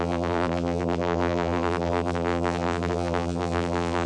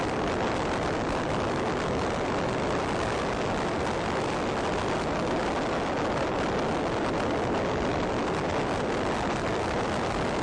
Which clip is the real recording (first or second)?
second